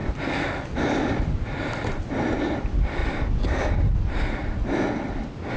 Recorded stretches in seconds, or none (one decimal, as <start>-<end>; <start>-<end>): 0.0-5.6